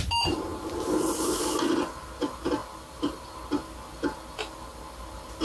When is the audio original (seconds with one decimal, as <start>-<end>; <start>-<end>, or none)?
0.0-5.4